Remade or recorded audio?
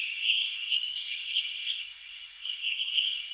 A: remade